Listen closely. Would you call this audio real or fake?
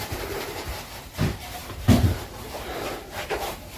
fake